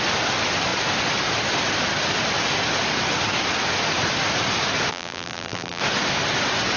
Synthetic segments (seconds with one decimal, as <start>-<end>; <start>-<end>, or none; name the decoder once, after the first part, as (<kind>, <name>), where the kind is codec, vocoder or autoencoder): 4.9-5.8 (vocoder, BigVGAN v2)